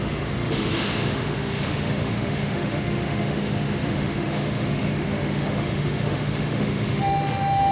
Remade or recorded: remade